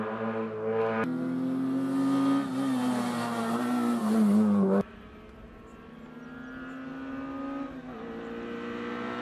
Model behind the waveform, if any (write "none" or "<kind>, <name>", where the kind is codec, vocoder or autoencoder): none